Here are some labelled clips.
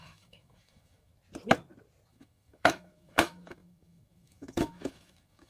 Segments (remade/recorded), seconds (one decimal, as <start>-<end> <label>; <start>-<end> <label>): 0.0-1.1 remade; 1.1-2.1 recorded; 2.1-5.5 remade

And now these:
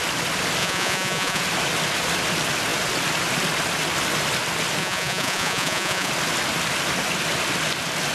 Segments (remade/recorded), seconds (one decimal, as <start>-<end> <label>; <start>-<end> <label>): 0.0-0.6 recorded; 0.6-1.4 remade; 1.4-4.8 recorded; 4.8-6.1 remade; 6.1-8.1 recorded

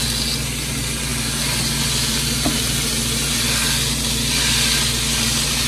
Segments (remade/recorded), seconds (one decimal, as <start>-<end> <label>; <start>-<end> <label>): 0.0-5.7 recorded